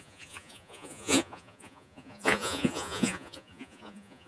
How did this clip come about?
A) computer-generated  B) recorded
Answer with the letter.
A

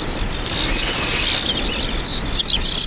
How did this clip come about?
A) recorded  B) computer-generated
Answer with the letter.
A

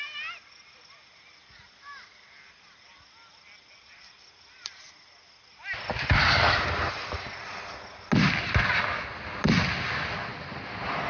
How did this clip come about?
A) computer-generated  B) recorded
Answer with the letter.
B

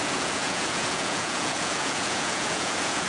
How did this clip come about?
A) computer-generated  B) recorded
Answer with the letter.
A